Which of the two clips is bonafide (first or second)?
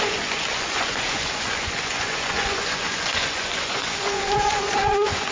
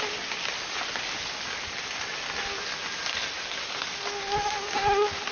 second